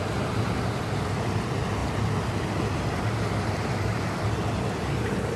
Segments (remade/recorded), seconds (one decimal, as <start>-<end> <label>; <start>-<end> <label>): 0.0-5.4 recorded